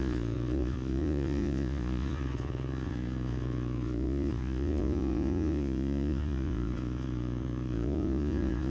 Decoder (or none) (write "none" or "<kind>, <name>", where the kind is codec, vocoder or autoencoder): vocoder, Vocos